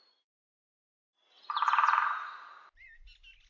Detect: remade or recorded recorded